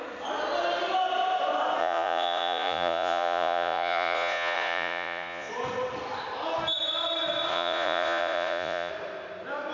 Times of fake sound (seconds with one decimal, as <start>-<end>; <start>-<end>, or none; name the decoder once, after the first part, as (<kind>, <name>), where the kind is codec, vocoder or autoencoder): 1.8-5.5 (vocoder, Vocos); 7.5-8.9